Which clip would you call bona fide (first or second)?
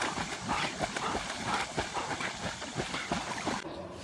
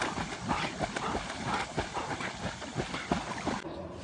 second